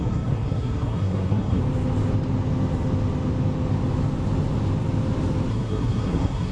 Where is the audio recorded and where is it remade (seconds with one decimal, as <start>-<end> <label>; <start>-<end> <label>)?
0.0-1.6 remade; 1.6-5.5 recorded; 5.5-6.5 remade